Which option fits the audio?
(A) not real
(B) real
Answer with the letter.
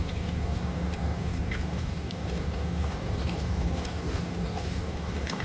A